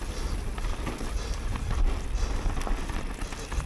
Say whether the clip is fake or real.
real